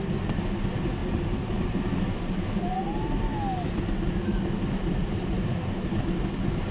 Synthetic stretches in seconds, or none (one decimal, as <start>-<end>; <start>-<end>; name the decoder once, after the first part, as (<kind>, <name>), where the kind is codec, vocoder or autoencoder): 1.0-2.1 (vocoder, BigVGAN v2); 5.0-5.6